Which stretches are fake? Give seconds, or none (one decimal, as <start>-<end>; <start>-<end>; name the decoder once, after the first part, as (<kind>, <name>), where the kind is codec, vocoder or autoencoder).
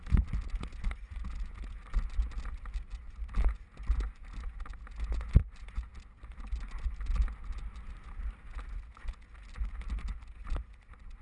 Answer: none